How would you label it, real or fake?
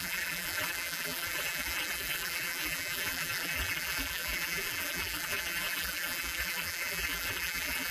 fake